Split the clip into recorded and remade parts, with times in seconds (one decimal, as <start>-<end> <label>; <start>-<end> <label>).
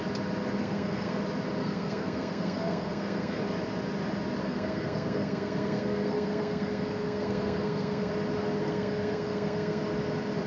0.0-0.6 recorded; 0.6-1.2 remade; 1.2-1.6 recorded; 1.6-3.4 remade; 3.4-4.4 recorded; 4.4-8.1 remade; 8.1-8.6 recorded; 8.6-9.8 remade; 9.8-10.5 recorded